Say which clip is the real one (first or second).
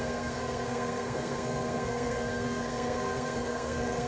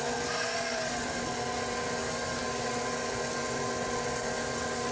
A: second